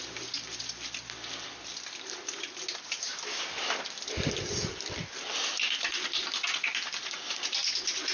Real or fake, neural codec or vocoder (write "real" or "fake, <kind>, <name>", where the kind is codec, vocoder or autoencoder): real